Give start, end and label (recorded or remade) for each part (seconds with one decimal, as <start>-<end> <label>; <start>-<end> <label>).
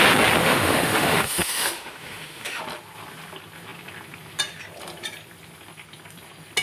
0.0-0.4 recorded; 0.4-2.6 remade; 2.6-6.6 recorded